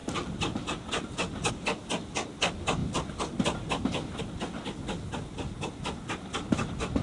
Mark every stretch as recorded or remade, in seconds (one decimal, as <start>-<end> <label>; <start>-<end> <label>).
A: 0.0-7.0 recorded